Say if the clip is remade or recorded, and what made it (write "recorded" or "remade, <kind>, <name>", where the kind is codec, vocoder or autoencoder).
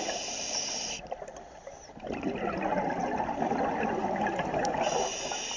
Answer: recorded